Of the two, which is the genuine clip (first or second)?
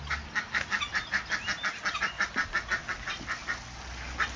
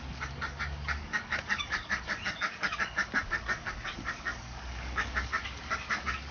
first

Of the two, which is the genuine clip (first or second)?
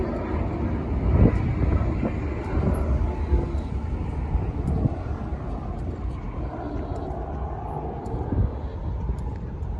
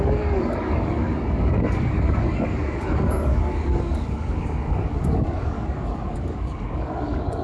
first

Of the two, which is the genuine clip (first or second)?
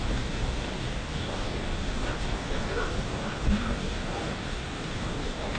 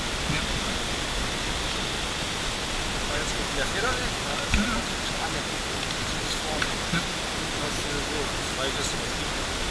second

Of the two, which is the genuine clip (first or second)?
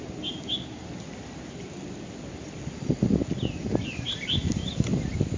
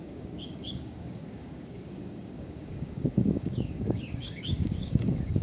first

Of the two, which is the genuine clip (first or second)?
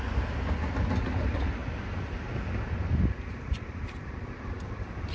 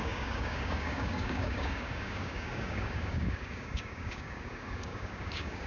first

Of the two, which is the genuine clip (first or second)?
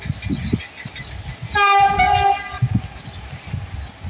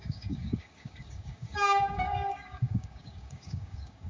first